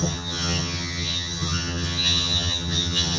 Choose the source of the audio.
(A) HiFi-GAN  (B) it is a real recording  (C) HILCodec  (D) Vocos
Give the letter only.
A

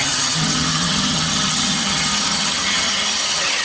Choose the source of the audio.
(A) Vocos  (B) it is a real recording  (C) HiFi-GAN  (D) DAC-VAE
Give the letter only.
C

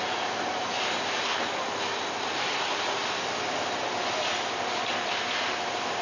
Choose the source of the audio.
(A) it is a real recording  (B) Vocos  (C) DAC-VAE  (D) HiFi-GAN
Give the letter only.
A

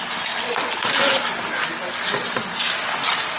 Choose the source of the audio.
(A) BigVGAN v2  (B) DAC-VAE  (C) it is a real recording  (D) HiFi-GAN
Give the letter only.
C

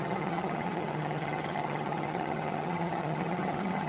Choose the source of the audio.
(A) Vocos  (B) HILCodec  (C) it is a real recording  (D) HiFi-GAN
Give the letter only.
D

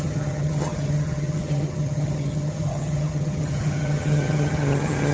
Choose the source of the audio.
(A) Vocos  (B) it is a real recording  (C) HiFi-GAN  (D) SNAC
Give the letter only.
C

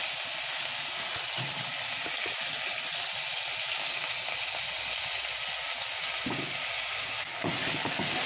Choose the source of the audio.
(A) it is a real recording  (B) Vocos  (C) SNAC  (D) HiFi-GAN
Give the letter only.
A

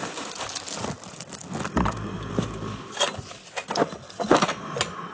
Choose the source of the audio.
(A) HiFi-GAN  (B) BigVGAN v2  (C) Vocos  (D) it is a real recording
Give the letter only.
D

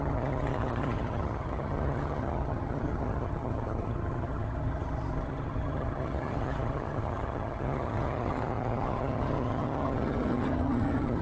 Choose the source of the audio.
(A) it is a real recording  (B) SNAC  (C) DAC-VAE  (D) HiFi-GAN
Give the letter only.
D